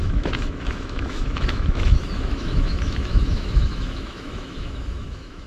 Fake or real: fake